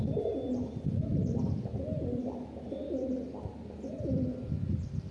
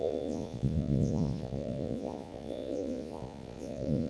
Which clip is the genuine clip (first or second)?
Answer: first